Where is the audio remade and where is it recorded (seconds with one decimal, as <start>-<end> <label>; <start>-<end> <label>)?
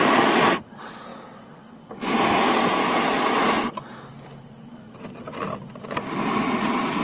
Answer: 0.0-7.0 recorded